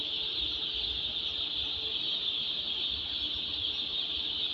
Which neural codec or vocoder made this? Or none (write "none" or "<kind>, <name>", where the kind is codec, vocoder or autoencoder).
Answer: none